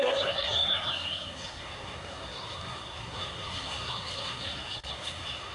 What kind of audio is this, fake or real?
fake